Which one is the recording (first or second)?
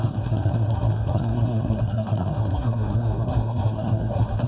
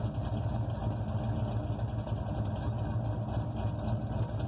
second